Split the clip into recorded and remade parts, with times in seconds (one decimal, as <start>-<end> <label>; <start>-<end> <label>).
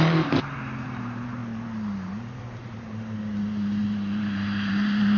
0.0-1.4 remade; 1.4-2.4 recorded; 2.4-5.2 remade